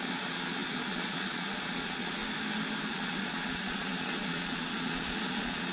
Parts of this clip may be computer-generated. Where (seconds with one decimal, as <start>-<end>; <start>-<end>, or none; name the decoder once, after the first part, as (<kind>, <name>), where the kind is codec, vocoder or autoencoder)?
0.0-2.2 (vocoder, Vocos); 2.9-5.7